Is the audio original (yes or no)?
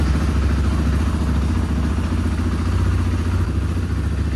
yes